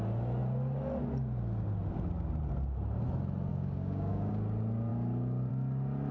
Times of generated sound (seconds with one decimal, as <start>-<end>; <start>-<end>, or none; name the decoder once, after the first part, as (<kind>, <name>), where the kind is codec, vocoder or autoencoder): 3.5-4.3 (codec, DAC)